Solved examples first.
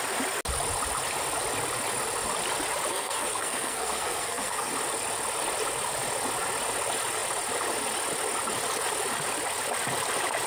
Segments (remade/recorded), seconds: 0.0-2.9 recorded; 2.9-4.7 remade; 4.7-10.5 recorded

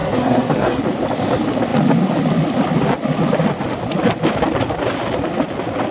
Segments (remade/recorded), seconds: 0.0-0.8 remade; 0.8-5.9 recorded

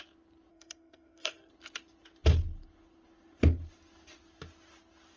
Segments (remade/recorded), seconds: 0.0-0.5 recorded; 0.5-1.5 remade; 1.5-5.2 recorded

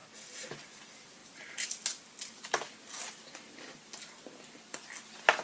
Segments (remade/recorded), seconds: 0.0-5.4 recorded

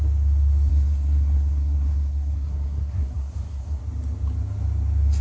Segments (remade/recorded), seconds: 0.0-0.7 recorded; 0.7-3.8 remade; 3.8-5.2 recorded

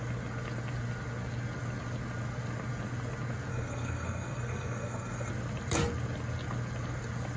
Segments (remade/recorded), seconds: 0.0-3.5 recorded; 3.5-5.3 remade; 5.3-7.4 recorded